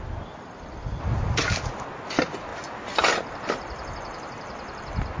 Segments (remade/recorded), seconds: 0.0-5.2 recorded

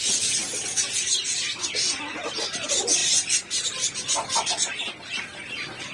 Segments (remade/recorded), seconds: 0.0-5.9 recorded

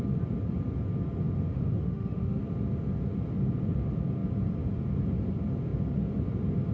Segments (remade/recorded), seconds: 0.0-1.5 recorded; 1.5-2.4 remade; 2.4-6.7 recorded